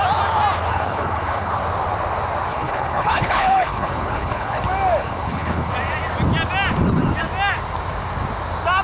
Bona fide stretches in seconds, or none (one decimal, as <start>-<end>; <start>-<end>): 0.0-0.7; 1.6-2.5; 4.6-5.0; 5.7-8.8